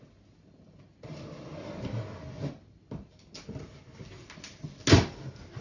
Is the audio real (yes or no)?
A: yes